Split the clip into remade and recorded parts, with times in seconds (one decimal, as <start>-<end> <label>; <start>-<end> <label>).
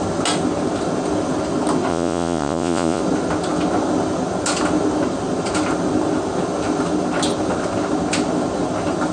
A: 0.0-1.9 recorded; 1.9-3.0 remade; 3.0-9.1 recorded